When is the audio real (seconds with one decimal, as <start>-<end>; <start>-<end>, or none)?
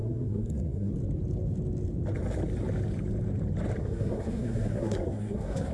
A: 0.9-3.8